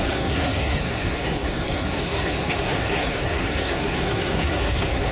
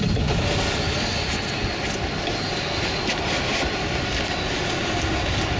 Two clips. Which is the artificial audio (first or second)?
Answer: first